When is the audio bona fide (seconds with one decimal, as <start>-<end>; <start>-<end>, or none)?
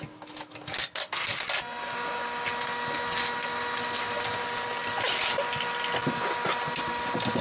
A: 0.0-7.4